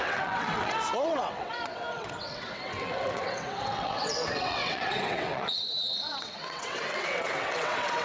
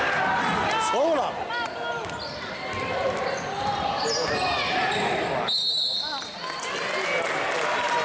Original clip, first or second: second